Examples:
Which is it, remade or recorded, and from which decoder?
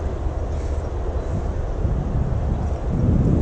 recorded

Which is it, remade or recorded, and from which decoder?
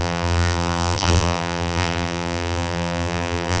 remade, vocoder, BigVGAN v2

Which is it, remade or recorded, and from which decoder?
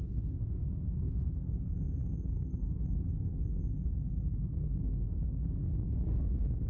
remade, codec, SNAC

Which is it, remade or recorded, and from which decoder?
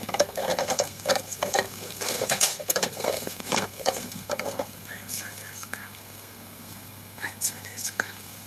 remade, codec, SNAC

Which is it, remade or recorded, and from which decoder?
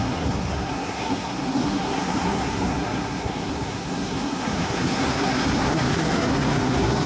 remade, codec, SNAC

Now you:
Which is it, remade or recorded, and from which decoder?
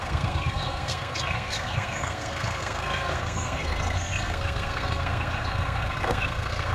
remade, codec, SNAC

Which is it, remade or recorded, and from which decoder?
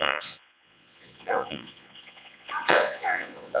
remade, vocoder, Vocos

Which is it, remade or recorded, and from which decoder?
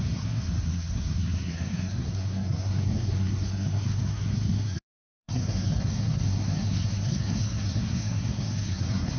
remade, codec, SNAC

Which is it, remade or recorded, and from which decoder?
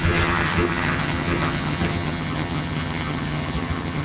remade, vocoder, HiFi-GAN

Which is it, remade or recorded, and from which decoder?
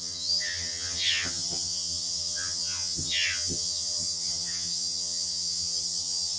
remade, vocoder, HiFi-GAN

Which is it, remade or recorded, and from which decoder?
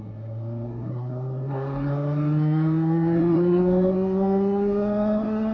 remade, codec, SNAC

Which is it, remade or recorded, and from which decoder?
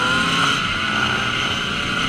recorded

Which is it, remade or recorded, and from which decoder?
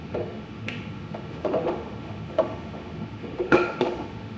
remade, autoencoder, DAC-VAE